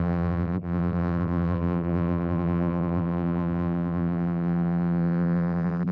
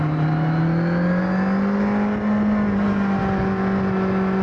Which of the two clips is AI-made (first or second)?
first